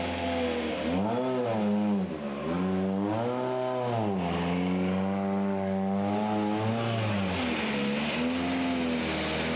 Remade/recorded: recorded